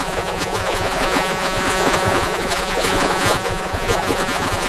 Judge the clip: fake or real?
fake